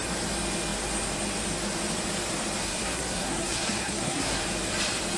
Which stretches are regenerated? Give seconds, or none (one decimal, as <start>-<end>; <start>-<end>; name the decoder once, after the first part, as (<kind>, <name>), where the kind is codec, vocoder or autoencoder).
2.6-4.4 (codec, SNAC)